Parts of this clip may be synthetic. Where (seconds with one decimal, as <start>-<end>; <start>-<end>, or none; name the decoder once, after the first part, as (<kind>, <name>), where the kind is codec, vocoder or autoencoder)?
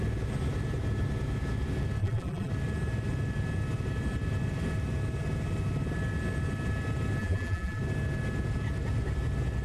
2.0-2.5 (vocoder, BigVGAN v2); 7.2-7.8